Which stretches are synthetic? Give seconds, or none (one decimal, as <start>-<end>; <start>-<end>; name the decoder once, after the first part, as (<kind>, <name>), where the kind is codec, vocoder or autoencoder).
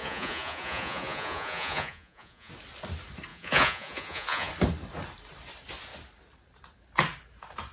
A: 0.0-2.5 (vocoder, Vocos); 3.3-4.5